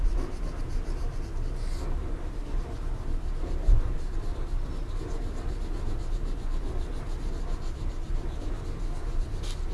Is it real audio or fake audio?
real